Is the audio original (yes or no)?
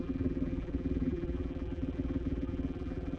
no